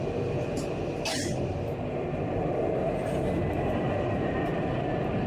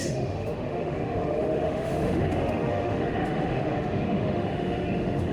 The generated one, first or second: second